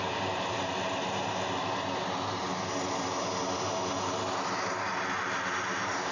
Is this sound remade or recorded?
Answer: recorded